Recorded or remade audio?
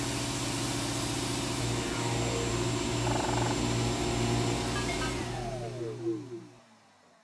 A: recorded